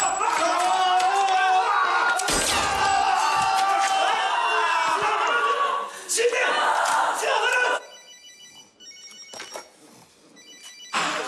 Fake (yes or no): no